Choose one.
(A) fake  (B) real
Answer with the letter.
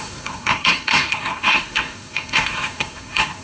A